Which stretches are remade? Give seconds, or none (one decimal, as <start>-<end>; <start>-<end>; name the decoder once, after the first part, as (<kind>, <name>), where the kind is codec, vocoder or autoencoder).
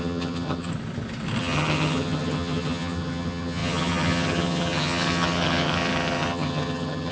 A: 0.0-0.7 (vocoder, HiFi-GAN); 1.4-7.1